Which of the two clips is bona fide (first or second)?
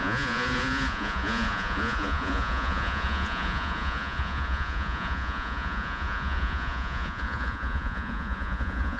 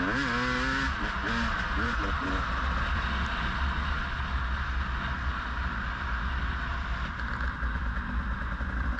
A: second